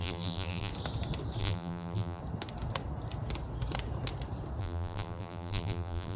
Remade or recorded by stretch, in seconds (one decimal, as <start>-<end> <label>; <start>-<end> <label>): 0.0-0.7 remade; 0.7-1.4 recorded; 1.4-2.2 remade; 2.2-4.6 recorded; 4.6-6.2 remade